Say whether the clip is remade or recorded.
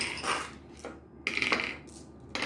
recorded